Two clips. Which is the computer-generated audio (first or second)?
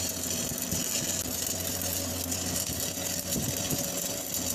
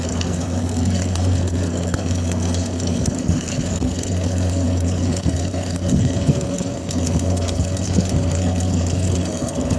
second